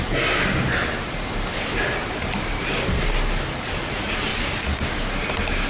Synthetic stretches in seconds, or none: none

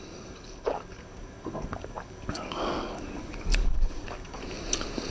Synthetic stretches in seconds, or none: 0.0-4.4 (codec, DAC)

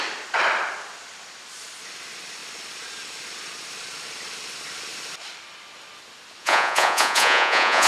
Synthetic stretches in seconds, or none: 6.4-7.9 (vocoder, Vocos)

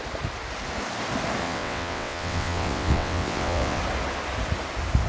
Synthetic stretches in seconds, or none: 1.4-3.8 (vocoder, WaveNeXt)